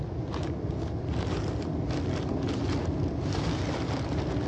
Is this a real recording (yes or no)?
yes